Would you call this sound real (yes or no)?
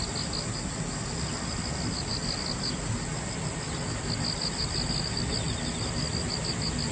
yes